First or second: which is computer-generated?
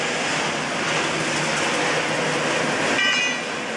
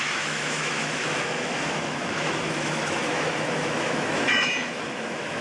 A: second